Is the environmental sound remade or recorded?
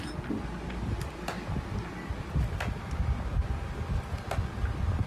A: recorded